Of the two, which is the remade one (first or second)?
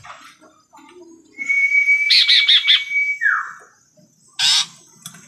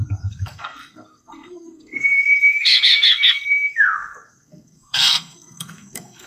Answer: second